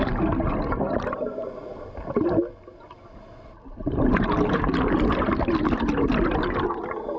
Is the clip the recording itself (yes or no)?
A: yes